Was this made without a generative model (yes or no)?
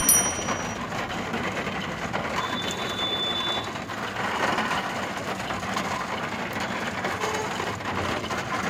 yes